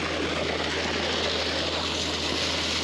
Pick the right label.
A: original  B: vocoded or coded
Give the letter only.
A